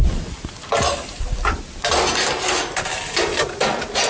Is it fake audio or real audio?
real